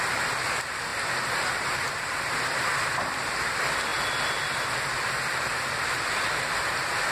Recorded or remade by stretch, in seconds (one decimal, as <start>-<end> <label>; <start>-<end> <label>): 0.0-7.1 recorded